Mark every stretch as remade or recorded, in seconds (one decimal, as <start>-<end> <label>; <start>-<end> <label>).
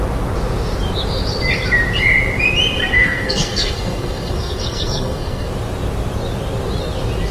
0.0-2.8 recorded; 2.8-5.5 remade; 5.5-7.3 recorded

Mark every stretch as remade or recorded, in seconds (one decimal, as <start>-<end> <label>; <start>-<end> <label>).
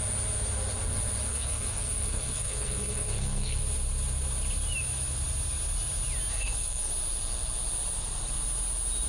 0.0-1.3 recorded; 1.3-3.6 remade; 3.6-6.3 recorded; 6.3-6.9 remade; 6.9-9.1 recorded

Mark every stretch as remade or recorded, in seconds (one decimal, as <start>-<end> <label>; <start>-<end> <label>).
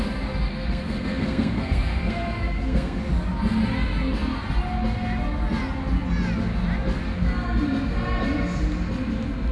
0.0-0.5 recorded; 0.5-3.0 remade; 3.0-9.5 recorded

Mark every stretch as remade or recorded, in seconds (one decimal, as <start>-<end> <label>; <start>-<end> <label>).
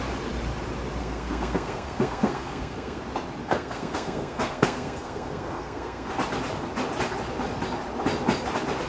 0.0-1.0 recorded; 1.0-3.0 remade; 3.0-3.4 recorded; 3.4-6.1 remade; 6.1-8.9 recorded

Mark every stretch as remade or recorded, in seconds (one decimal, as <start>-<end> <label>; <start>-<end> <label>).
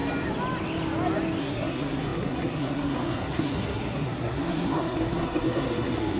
0.0-1.4 recorded; 1.4-6.2 remade